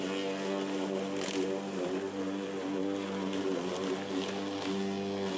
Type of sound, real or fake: real